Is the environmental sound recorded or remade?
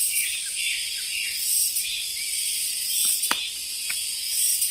recorded